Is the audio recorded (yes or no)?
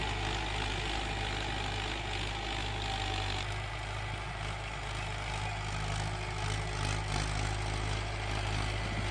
yes